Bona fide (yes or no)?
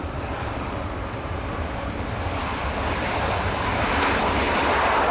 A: no